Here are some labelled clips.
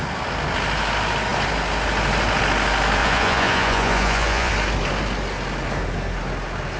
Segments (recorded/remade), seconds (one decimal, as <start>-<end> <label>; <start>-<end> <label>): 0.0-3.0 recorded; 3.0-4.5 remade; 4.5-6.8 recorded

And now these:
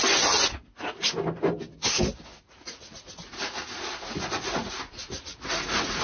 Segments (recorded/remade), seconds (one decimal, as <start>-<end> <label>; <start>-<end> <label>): 0.0-2.3 recorded; 2.3-6.0 remade

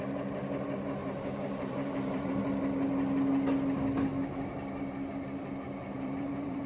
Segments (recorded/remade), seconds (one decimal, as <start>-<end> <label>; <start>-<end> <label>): 0.0-1.0 recorded; 1.0-2.3 remade; 2.3-5.8 recorded; 5.8-6.7 remade

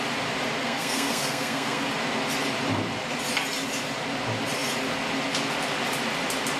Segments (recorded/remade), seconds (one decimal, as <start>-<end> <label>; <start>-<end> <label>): 0.0-0.6 recorded; 0.6-1.9 remade; 1.9-6.6 recorded

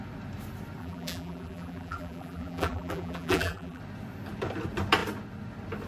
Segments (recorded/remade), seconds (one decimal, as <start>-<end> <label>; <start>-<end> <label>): 0.0-0.8 recorded; 0.8-3.8 remade; 3.8-5.9 recorded

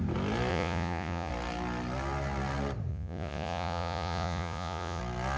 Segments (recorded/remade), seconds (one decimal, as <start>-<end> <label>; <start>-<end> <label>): 0.0-0.5 recorded; 0.5-1.3 remade; 1.3-2.9 recorded; 2.9-5.0 remade; 5.0-5.4 recorded

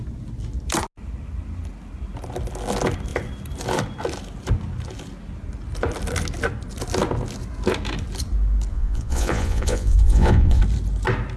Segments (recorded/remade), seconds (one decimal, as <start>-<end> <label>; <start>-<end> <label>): 0.0-8.7 recorded; 8.7-10.6 remade; 10.6-11.4 recorded

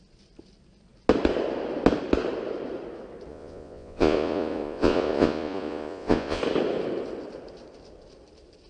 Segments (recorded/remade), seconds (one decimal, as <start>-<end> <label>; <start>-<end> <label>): 0.0-3.3 recorded; 3.3-6.4 remade; 6.4-8.7 recorded